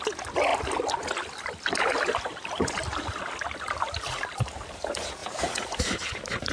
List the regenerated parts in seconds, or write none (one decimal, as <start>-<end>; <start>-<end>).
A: none